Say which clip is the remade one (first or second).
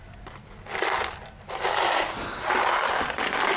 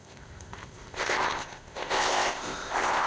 second